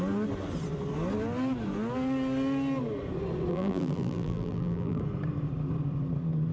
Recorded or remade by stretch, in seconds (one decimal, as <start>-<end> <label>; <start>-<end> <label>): 0.0-3.5 recorded; 3.5-5.0 remade; 5.0-6.5 recorded